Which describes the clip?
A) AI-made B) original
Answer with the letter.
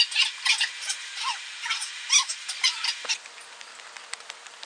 B